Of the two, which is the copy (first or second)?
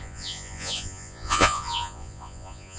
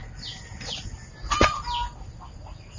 first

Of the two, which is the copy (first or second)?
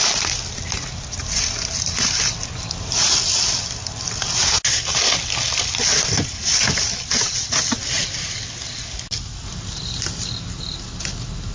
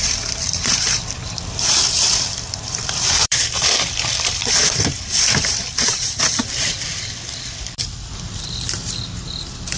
second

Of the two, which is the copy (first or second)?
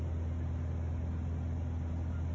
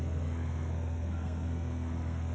second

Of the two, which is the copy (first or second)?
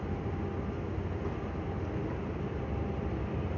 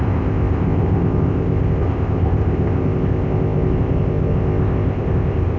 second